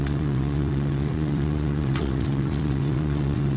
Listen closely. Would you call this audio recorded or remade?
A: remade